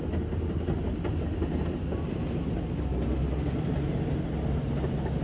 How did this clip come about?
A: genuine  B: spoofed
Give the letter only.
A